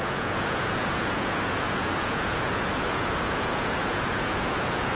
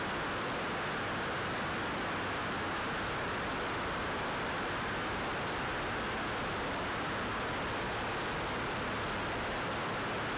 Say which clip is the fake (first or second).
first